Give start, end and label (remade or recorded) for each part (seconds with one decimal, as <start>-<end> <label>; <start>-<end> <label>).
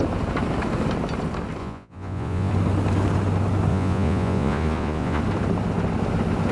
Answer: 0.0-1.6 recorded; 1.6-2.5 remade; 2.5-3.7 recorded; 3.7-5.2 remade; 5.2-6.5 recorded